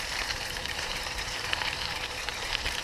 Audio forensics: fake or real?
fake